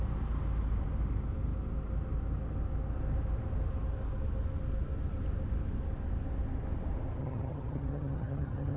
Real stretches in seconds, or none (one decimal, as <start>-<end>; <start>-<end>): 0.0-7.2